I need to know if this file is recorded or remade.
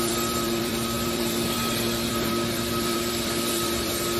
remade